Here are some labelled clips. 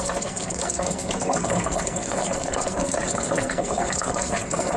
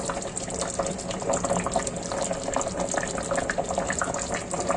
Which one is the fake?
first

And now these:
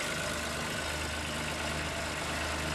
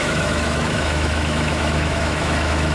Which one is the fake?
second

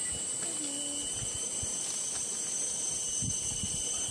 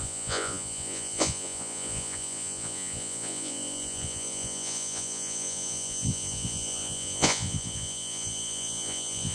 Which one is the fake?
second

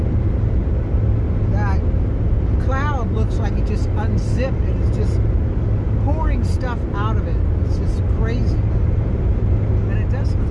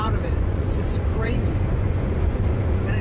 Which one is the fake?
second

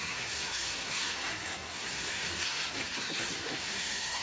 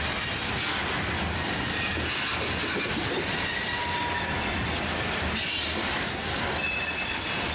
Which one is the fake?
first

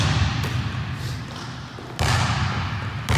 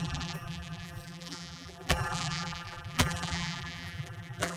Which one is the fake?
second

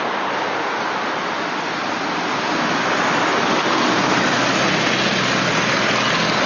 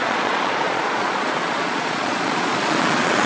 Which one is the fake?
second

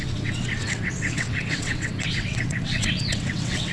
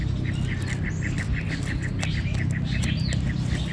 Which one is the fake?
first